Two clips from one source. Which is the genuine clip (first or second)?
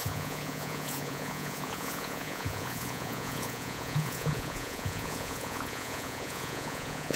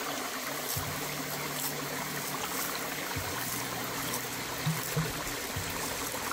second